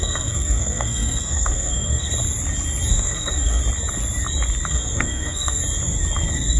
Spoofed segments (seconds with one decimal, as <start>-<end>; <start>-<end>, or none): 0.0-2.1; 2.9-3.6; 4.7-5.6